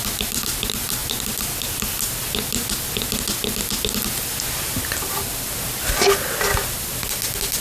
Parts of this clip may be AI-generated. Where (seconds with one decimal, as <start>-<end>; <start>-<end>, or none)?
none